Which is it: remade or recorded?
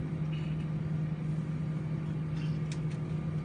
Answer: recorded